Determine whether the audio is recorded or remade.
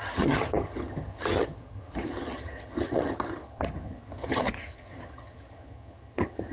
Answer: remade